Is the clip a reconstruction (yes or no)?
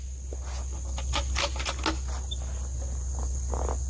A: no